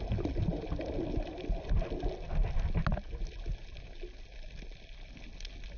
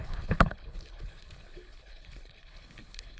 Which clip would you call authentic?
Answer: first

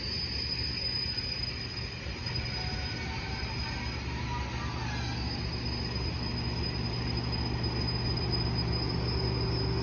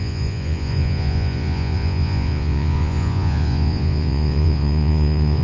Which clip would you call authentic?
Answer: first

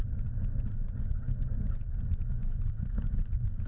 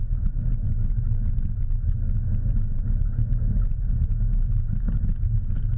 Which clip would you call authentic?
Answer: second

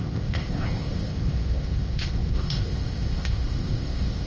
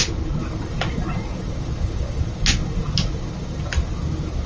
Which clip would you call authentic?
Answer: second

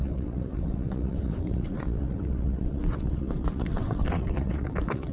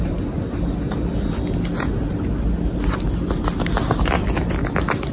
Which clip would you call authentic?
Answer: second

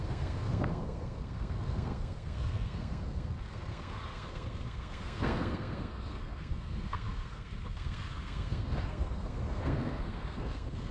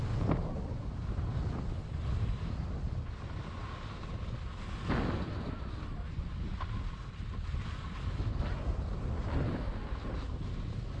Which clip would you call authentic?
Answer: second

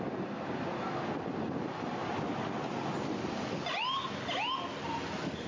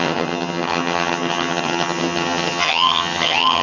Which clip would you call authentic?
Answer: first